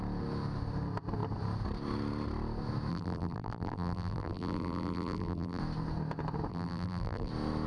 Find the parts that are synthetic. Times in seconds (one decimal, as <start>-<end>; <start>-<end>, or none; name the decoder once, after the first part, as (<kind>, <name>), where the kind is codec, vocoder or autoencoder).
2.9-5.6 (vocoder, BigVGAN v2); 6.5-7.3